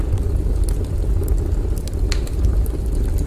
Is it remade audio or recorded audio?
recorded